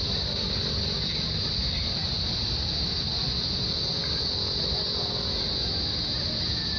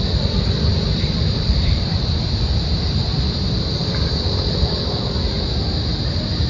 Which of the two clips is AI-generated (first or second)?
second